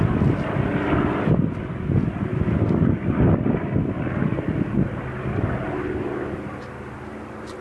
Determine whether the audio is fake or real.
real